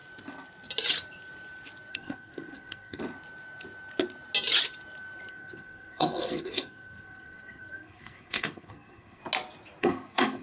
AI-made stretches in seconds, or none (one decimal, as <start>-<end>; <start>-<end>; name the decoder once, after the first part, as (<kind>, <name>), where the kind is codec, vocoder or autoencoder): 1.9-3.0 (codec, SNAC); 5.3-9.2; 9.8-10.4